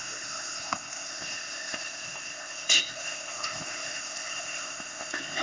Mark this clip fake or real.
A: fake